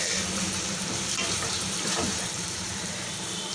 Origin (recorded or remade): remade